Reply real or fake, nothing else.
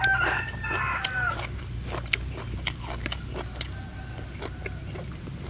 real